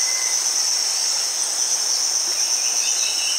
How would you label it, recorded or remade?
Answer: recorded